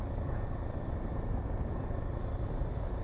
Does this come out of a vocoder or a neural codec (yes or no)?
no